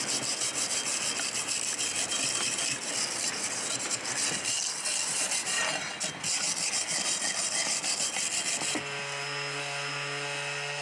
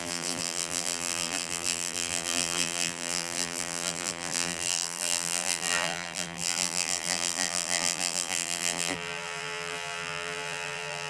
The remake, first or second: second